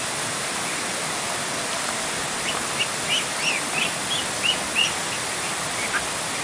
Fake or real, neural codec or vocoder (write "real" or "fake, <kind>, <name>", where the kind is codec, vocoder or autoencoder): real